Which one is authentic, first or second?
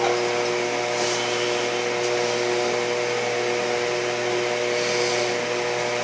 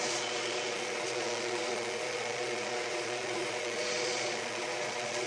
first